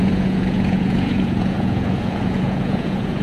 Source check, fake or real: fake